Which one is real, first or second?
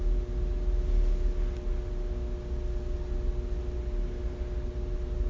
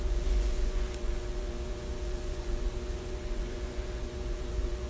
first